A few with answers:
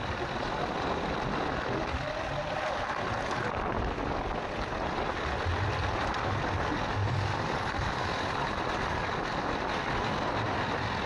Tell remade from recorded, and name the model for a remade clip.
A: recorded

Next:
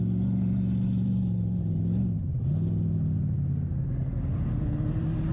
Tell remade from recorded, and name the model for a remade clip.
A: recorded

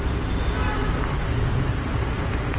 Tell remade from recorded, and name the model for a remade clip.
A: recorded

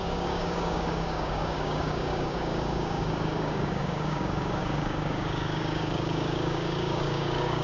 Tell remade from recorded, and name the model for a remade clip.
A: remade, codec, DAC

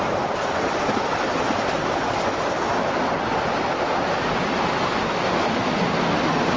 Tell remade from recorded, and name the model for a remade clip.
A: recorded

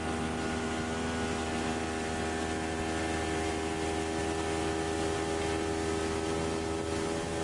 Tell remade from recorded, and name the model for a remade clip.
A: recorded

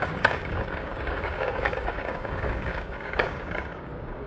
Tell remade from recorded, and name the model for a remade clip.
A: remade, codec, DAC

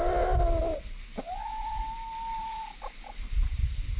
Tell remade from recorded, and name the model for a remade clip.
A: recorded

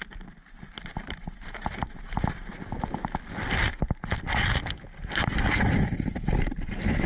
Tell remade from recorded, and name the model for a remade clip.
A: recorded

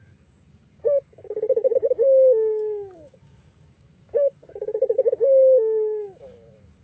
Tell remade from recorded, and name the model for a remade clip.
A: remade, codec, DAC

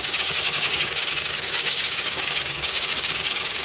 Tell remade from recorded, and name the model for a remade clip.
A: remade, codec, DAC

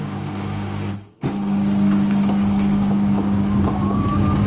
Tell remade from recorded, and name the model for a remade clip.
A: remade, codec, DAC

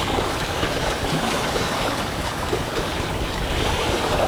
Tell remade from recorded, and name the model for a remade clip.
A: remade, codec, DAC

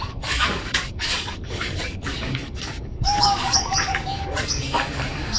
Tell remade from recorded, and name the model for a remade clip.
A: remade, codec, DAC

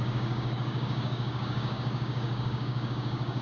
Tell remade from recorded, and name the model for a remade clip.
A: remade, codec, DAC